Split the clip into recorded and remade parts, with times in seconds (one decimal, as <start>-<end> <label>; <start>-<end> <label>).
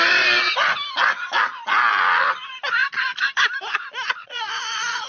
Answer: 0.0-4.2 recorded; 4.2-5.1 remade